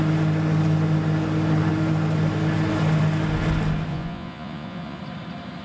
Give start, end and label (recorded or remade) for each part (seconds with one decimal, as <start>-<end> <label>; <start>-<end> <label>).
0.0-3.9 recorded; 3.9-5.0 remade; 5.0-5.6 recorded